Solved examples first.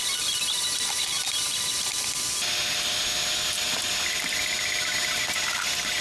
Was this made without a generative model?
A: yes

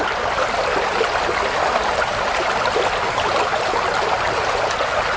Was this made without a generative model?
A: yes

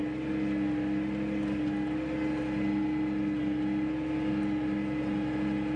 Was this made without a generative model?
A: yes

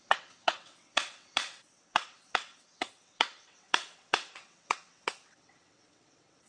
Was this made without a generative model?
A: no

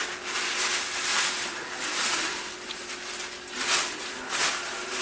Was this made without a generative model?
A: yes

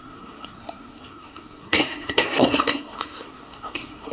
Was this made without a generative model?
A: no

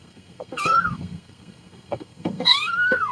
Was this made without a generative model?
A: no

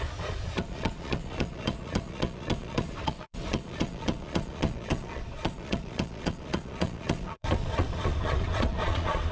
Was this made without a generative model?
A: no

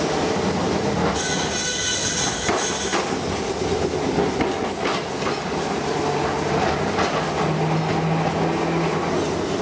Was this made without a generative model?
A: yes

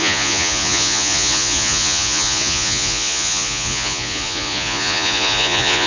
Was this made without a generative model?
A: no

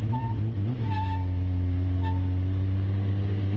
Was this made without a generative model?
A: yes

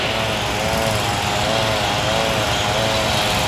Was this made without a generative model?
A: yes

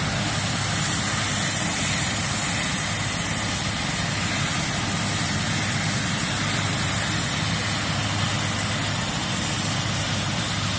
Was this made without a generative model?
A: yes